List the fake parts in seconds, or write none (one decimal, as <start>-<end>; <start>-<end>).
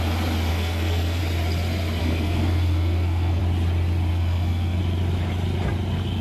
0.5-1.2; 2.0-3.4; 4.1-4.8